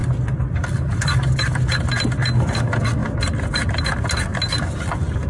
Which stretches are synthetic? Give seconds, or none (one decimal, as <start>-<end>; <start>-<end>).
0.0-1.1; 3.0-3.8